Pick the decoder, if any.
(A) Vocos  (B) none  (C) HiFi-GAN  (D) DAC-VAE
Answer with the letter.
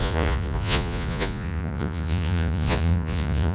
A